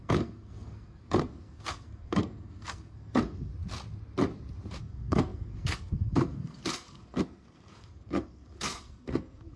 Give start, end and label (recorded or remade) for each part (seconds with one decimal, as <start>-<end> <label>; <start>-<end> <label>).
0.0-3.5 remade; 3.5-4.8 recorded; 4.8-9.6 remade